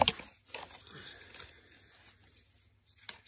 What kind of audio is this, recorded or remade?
recorded